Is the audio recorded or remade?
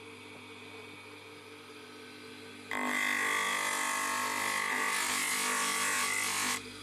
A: recorded